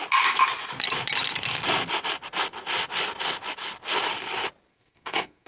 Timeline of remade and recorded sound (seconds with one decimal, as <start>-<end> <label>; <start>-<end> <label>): 0.0-4.7 recorded; 4.7-5.5 remade